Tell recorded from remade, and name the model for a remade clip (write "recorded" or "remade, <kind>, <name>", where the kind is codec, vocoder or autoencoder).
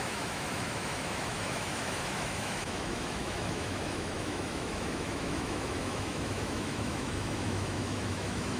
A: remade, autoencoder, DAC-VAE